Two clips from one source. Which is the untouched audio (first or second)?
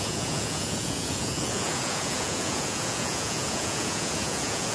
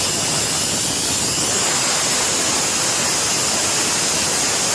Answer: second